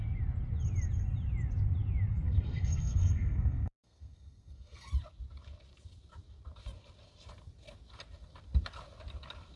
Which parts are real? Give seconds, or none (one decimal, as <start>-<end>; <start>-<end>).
0.0-2.1; 4.9-9.6